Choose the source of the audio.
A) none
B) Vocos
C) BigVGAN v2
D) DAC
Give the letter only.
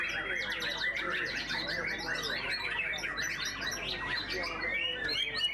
A